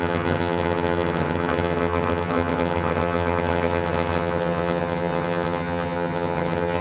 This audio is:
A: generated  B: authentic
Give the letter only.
A